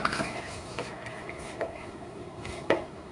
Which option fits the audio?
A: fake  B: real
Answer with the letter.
A